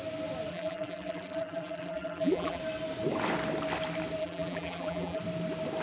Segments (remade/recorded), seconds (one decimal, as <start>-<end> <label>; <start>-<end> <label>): 0.0-0.5 recorded; 0.5-2.6 remade; 2.6-4.2 recorded; 4.2-5.2 remade; 5.2-5.8 recorded